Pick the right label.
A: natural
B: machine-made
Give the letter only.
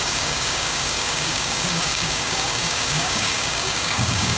B